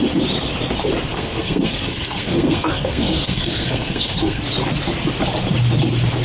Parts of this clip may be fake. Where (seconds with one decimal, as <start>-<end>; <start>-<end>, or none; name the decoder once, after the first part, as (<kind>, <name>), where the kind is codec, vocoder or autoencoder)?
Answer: 1.1-4.4 (codec, SNAC)